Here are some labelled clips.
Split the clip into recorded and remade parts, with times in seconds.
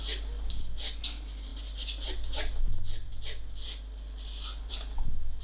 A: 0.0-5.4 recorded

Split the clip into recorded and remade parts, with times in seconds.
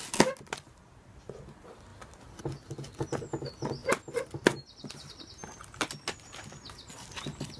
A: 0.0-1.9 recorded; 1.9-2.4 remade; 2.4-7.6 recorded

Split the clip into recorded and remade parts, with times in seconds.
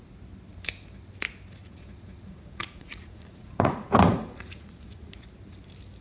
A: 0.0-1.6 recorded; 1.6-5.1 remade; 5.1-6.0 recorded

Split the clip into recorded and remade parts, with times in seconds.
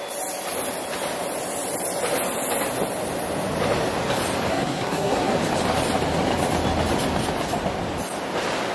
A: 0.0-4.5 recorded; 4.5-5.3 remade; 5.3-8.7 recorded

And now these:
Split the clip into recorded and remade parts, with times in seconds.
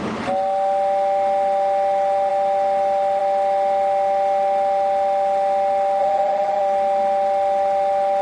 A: 0.0-6.0 recorded; 6.0-6.6 remade; 6.6-8.2 recorded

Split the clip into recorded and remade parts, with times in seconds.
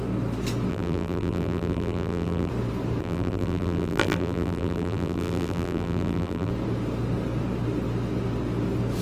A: 0.0-0.7 recorded; 0.7-2.5 remade; 2.5-3.0 recorded; 3.0-6.5 remade; 6.5-9.0 recorded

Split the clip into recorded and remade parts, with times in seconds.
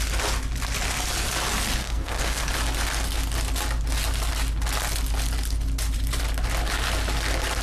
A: 0.0-1.8 recorded; 1.8-2.5 remade; 2.5-7.6 recorded